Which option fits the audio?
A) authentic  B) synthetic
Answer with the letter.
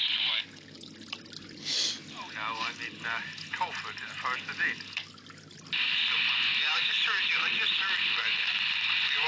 A